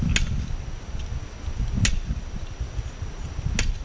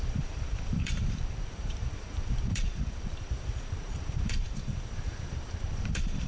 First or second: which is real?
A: first